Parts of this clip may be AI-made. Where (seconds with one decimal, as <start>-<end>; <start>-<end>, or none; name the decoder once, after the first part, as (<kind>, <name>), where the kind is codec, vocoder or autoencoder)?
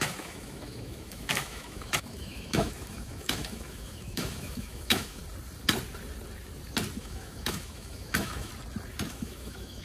0.0-5.2 (autoencoder, DAC-VAE); 7.0-8.5; 9.1-9.8